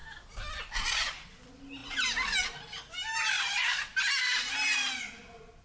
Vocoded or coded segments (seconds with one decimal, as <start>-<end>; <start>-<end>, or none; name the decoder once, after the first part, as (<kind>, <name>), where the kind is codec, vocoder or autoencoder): none